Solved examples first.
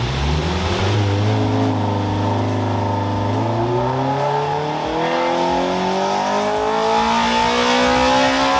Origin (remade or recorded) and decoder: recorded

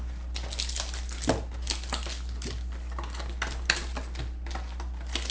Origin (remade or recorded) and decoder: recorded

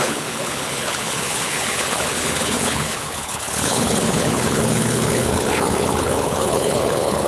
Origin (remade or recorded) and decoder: remade, codec, HILCodec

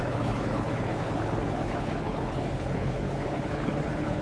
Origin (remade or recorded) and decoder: remade, codec, HILCodec